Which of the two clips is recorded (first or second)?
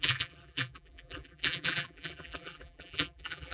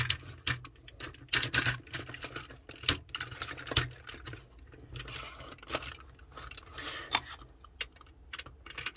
second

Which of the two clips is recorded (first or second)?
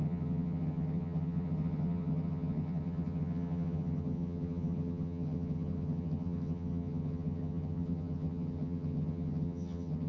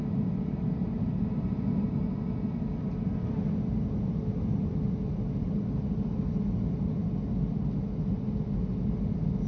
second